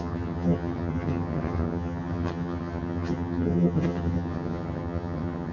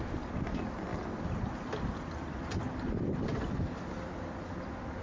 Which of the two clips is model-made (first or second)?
first